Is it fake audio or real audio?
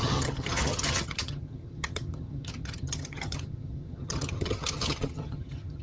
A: fake